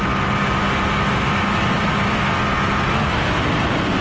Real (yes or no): yes